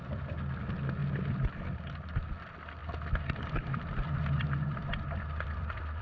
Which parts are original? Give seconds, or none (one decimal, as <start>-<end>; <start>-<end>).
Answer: 0.0-2.8